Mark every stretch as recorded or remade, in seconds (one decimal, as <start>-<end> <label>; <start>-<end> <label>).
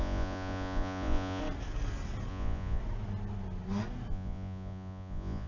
0.0-1.4 remade; 1.4-2.3 recorded; 2.3-2.8 remade; 2.8-4.1 recorded; 4.1-5.5 remade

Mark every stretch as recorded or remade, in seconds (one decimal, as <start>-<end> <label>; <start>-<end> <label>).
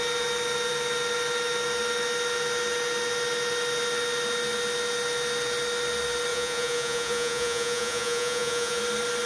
0.0-6.3 recorded; 6.3-8.8 remade; 8.8-9.3 recorded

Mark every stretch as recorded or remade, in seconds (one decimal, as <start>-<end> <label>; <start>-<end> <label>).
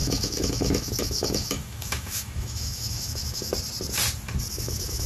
0.0-3.5 remade; 3.5-4.5 recorded; 4.5-5.1 remade